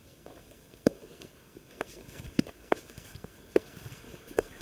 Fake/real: fake